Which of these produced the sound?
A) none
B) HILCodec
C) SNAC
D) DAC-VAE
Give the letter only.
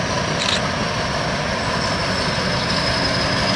A